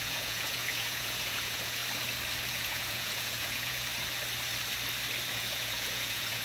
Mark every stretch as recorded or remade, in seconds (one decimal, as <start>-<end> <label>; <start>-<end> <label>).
0.0-1.8 remade; 1.8-2.5 recorded; 2.5-3.9 remade; 3.9-5.3 recorded; 5.3-6.4 remade